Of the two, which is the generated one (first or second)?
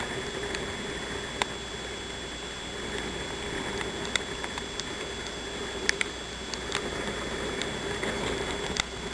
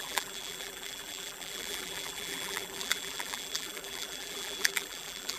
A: second